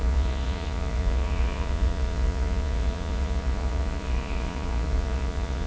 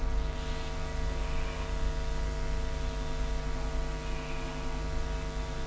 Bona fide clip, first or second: second